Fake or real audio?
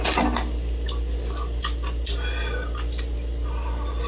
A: real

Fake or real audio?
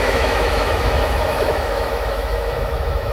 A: fake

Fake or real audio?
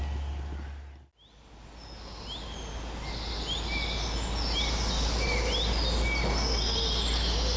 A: real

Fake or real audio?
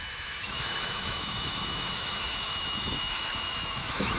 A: fake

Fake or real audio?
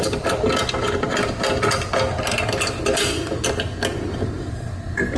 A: real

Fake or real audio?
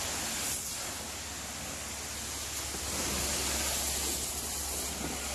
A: real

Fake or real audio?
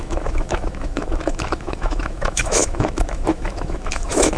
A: fake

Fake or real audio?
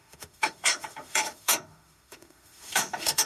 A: fake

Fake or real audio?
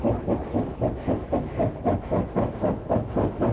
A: fake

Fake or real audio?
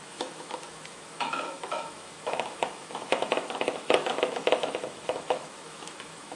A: fake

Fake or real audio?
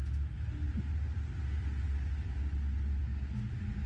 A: real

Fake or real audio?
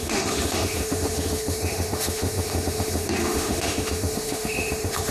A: fake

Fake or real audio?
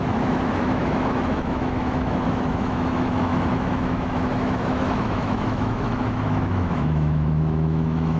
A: fake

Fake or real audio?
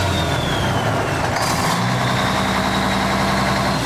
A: real